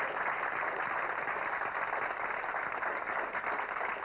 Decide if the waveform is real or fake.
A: real